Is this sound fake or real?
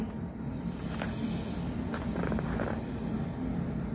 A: real